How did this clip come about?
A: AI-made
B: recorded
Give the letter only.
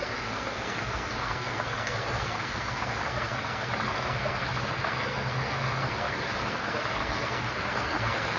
A